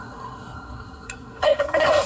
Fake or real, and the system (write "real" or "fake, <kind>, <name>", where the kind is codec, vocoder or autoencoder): fake, codec, SNAC